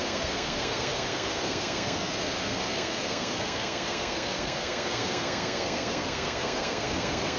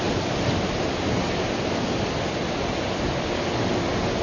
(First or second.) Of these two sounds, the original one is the second